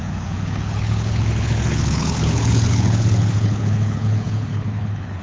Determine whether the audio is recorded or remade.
remade